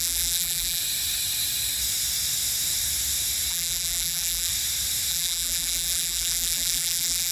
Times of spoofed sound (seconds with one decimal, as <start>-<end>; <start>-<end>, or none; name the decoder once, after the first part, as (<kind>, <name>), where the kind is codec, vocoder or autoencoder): 0.0-0.8 (vocoder, BigVGAN v2); 3.5-4.5; 5.1-7.3